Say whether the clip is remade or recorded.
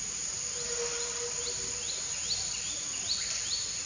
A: recorded